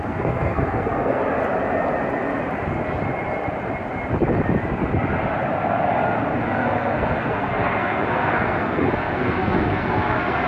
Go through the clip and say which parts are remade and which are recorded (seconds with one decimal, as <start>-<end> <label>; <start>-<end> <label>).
0.0-1.2 remade; 1.2-6.4 recorded; 6.4-10.5 remade